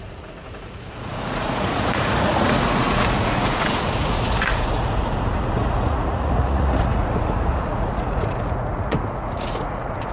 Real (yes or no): no